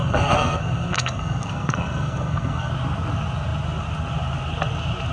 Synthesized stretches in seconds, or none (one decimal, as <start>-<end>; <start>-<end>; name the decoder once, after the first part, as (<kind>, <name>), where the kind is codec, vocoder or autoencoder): 0.0-2.7 (codec, SNAC)